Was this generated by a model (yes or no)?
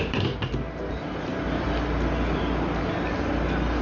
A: no